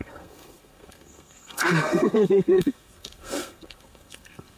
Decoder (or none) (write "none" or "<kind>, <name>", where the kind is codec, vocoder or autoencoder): codec, SNAC